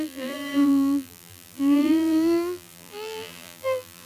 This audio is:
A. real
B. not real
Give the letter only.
B